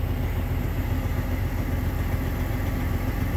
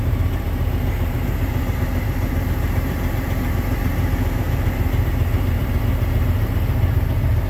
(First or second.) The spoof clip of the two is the second